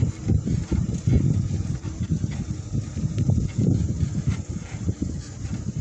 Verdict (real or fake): real